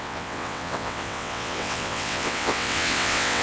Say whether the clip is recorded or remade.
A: remade